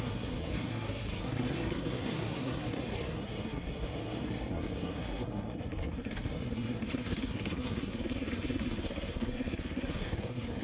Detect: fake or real fake